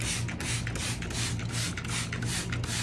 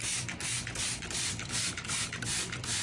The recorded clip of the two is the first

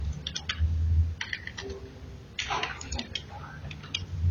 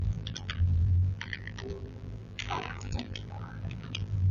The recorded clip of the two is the first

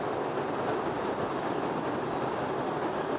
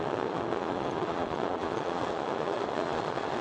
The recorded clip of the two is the first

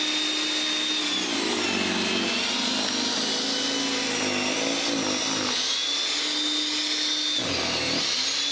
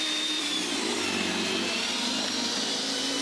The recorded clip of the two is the first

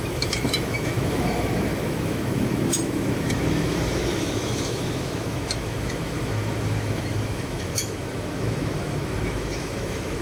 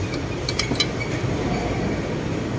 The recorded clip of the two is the second